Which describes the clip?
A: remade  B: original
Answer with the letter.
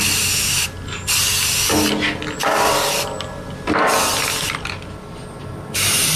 B